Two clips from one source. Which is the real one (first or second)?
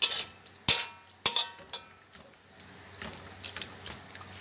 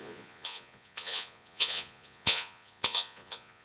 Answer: first